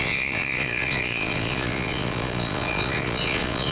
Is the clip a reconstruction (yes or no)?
yes